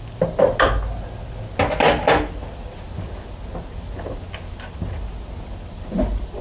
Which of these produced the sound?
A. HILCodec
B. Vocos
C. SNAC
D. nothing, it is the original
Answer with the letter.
D